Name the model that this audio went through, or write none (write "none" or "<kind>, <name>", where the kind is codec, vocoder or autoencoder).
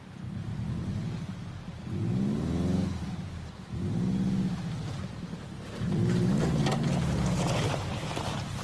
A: none